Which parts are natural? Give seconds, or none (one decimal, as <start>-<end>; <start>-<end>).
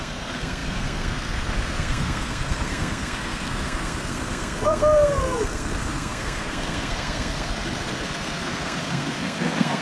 none